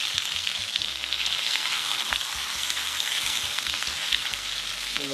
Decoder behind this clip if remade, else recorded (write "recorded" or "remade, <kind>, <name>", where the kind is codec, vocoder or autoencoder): remade, codec, SNAC